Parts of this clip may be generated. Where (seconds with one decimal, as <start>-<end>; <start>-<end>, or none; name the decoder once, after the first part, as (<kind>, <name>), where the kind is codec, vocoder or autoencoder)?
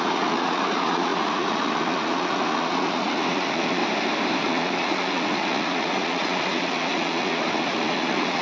0.0-3.8 (vocoder, Vocos); 4.4-8.4